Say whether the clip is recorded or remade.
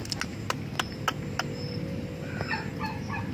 recorded